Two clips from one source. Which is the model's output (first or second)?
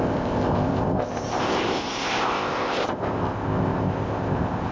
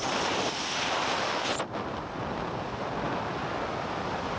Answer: first